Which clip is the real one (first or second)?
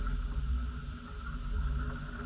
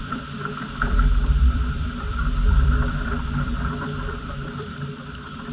first